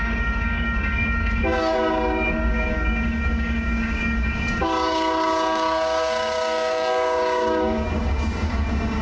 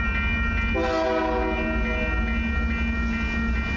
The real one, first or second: second